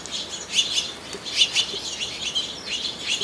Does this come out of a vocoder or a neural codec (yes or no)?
no